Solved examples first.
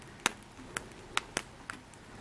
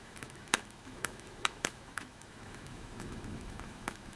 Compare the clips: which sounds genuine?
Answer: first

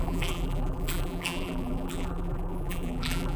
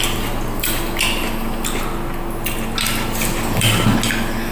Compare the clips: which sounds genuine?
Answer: second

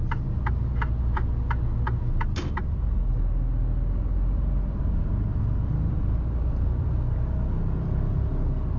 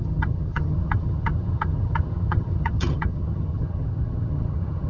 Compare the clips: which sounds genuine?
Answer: first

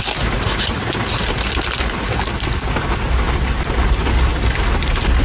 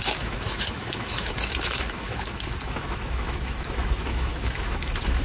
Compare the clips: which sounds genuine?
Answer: first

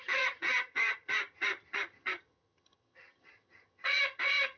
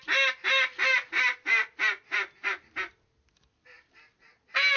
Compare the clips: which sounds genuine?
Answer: second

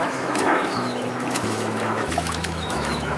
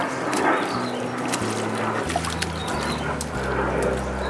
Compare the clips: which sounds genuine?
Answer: second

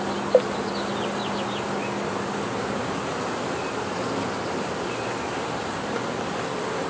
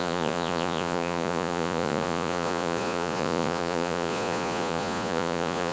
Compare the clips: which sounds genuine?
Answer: first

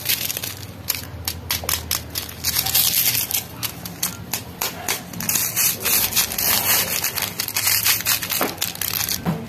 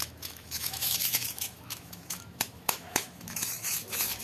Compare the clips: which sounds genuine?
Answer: first